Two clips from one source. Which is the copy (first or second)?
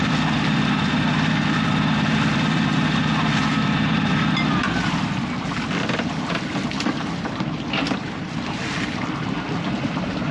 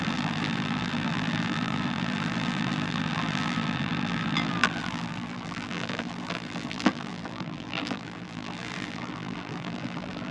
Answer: second